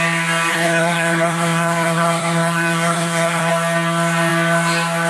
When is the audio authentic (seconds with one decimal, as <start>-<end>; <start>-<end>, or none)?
0.0-0.5; 3.5-5.1